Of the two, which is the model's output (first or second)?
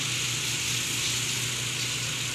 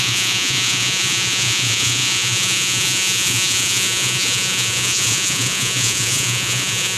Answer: second